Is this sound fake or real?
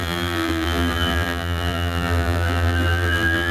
fake